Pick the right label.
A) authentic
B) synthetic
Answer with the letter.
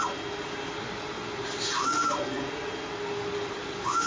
A